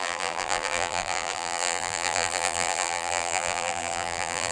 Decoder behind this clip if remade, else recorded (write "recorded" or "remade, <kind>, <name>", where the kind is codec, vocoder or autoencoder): remade, vocoder, BigVGAN v2